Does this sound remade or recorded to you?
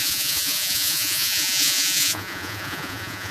remade